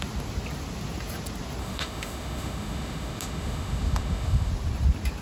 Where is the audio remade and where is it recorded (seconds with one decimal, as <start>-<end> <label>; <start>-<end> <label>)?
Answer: 0.0-1.6 recorded; 1.6-4.5 remade; 4.5-5.2 recorded